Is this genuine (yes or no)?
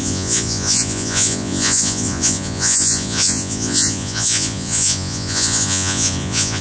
no